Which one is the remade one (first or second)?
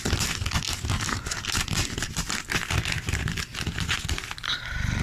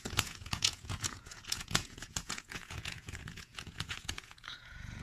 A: second